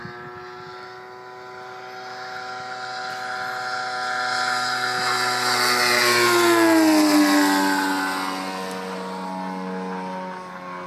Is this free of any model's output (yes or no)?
yes